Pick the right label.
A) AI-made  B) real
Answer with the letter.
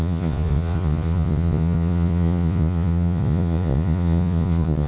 A